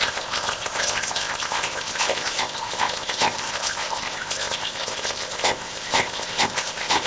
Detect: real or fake fake